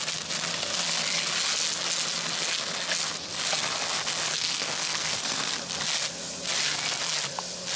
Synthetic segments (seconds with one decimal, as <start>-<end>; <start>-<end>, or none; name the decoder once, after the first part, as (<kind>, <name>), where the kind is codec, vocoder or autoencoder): 4.3-5.5 (codec, SNAC)